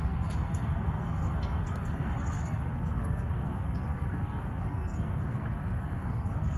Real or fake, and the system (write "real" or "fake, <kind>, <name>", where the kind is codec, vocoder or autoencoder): fake, codec, SNAC